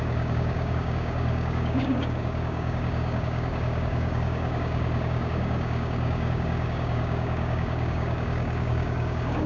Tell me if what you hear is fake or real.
fake